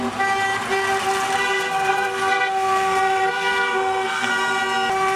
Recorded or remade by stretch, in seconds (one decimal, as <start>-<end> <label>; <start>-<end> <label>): 0.0-1.4 recorded; 1.4-4.3 remade; 4.3-5.2 recorded